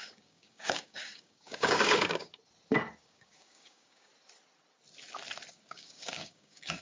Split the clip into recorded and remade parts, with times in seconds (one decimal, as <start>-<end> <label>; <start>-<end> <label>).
0.0-2.3 remade; 2.3-3.0 recorded; 3.0-4.1 remade; 4.1-5.5 recorded; 5.5-6.8 remade